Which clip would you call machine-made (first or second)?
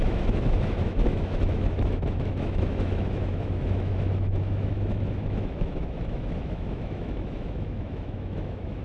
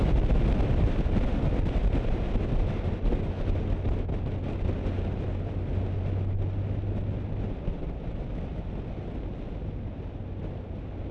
first